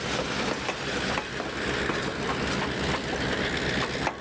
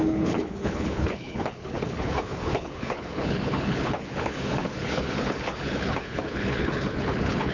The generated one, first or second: second